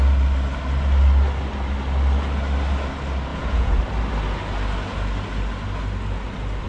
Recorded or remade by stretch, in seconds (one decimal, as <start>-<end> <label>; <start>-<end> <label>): 0.0-3.3 recorded; 3.3-3.8 remade; 3.8-6.7 recorded